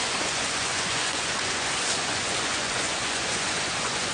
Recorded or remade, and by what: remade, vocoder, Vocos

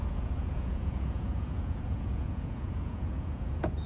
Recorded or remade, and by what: remade, vocoder, Vocos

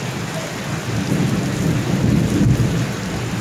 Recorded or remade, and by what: recorded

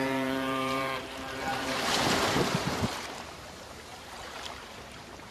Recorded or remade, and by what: remade, vocoder, BigVGAN v2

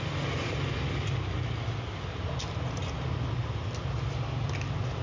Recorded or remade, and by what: recorded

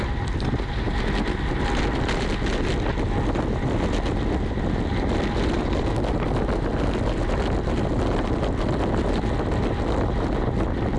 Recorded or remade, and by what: recorded